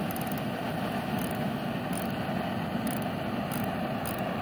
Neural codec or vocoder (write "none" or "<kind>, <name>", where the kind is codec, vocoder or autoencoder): none